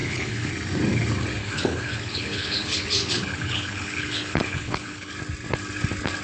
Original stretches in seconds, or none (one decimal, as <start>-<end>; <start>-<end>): 0.5-1.4; 5.1-6.2